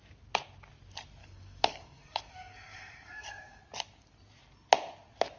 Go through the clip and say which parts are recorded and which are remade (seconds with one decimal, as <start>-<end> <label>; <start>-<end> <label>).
0.0-1.2 recorded; 1.2-3.6 remade; 3.6-5.4 recorded